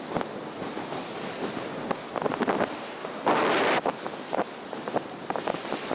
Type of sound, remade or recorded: recorded